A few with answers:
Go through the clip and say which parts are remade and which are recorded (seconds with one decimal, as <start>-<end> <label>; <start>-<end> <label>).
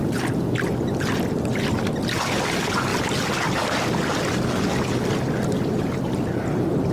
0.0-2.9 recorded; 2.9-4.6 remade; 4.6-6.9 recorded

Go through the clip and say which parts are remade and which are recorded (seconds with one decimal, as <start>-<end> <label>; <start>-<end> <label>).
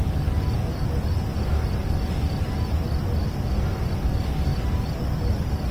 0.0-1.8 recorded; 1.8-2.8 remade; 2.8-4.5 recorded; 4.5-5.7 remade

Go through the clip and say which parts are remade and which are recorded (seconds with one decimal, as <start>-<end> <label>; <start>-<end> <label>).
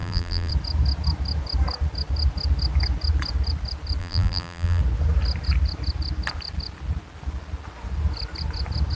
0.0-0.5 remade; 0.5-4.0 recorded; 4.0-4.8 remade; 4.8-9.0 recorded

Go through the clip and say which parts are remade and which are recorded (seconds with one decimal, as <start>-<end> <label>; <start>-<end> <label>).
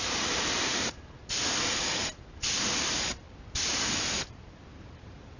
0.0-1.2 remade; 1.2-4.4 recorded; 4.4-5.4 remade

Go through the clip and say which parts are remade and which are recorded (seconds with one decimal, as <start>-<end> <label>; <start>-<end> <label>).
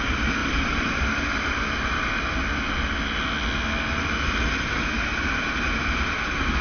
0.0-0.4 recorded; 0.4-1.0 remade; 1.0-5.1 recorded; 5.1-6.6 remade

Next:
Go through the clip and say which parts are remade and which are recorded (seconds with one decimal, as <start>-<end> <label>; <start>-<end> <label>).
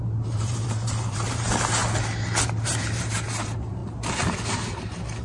0.0-1.8 remade; 1.8-2.4 recorded; 2.4-3.8 remade; 3.8-4.7 recorded; 4.7-5.2 remade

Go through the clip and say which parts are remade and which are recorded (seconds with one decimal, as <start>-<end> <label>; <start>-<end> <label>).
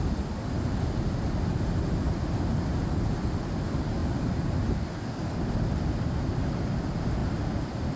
0.0-7.2 recorded; 7.2-8.0 remade